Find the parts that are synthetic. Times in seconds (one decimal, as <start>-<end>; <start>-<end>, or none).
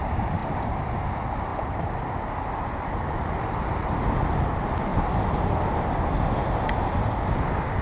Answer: 1.5-4.2; 4.9-5.7